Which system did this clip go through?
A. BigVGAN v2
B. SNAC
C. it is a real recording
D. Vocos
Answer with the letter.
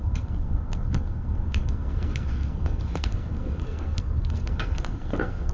B